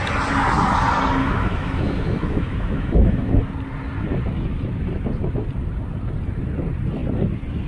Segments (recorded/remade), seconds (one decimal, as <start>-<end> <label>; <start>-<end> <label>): 0.0-1.2 recorded; 1.2-3.4 remade; 3.4-7.7 recorded